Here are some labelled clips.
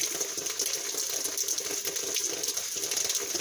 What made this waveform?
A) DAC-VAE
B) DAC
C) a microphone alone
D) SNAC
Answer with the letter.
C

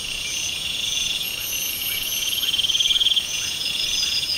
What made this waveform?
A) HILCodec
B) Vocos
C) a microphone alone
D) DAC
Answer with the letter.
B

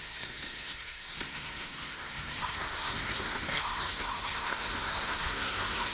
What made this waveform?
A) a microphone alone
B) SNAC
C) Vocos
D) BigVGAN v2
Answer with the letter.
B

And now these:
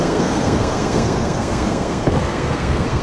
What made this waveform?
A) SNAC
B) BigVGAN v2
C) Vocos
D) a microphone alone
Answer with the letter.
A